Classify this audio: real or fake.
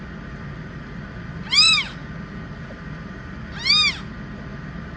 real